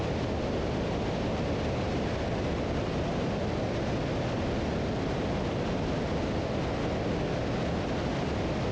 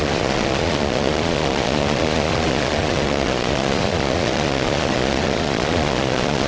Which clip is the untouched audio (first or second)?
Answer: first